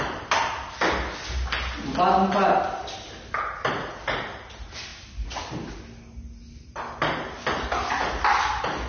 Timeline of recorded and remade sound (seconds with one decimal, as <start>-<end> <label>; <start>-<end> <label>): 0.0-8.9 recorded